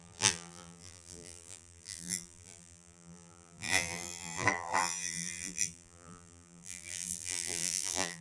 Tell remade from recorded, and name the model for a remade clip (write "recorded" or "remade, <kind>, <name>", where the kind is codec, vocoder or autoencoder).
remade, vocoder, BigVGAN v2